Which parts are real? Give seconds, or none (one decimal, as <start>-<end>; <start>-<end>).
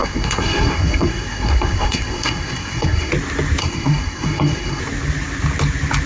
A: 3.1-3.6; 4.8-6.1